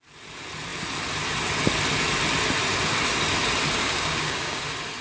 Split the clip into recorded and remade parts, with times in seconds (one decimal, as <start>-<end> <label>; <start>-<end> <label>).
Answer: 0.0-3.8 recorded; 3.8-4.6 remade; 4.6-5.0 recorded